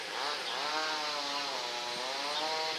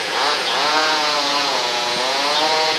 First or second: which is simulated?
second